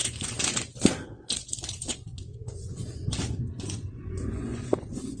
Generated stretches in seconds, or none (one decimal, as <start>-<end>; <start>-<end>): 0.0-5.2